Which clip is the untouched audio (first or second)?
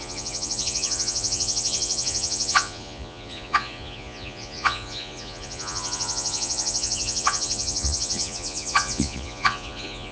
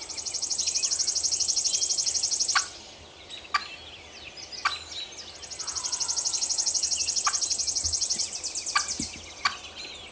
second